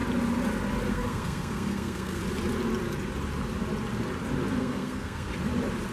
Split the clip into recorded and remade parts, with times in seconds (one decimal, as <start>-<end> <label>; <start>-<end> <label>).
0.0-0.9 recorded; 0.9-2.2 remade; 2.2-4.6 recorded; 4.6-5.3 remade; 5.3-5.9 recorded